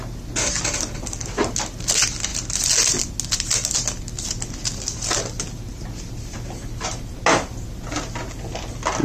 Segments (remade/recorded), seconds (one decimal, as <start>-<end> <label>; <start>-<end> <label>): 0.0-9.0 recorded